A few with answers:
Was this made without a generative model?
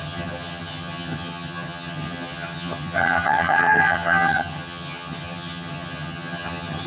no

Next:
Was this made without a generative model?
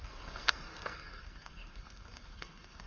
no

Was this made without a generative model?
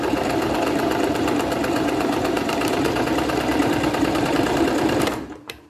no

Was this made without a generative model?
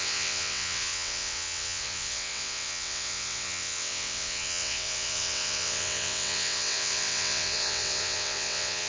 no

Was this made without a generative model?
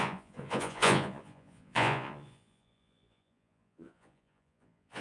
no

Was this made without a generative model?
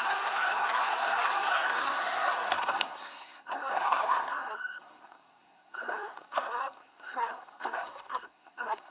no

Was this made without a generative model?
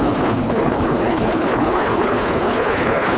no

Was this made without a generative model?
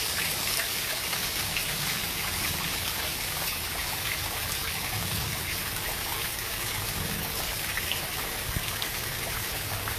no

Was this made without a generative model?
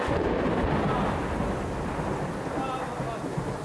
yes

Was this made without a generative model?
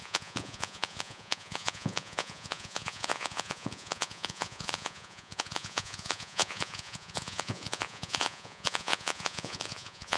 no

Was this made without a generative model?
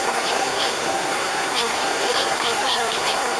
no